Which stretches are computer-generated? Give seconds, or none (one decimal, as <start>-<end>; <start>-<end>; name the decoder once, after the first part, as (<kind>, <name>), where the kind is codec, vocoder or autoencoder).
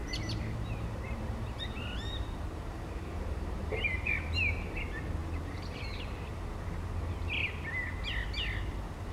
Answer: 0.0-4.8 (vocoder, BigVGAN v2); 5.2-6.3